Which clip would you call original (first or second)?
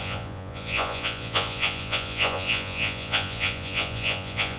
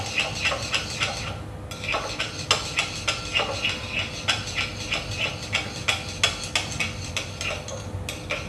second